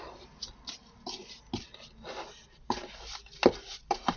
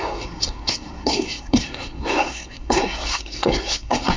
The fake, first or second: second